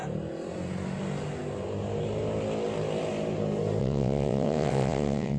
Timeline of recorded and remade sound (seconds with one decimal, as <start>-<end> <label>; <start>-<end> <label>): 0.0-3.8 recorded; 3.8-5.4 remade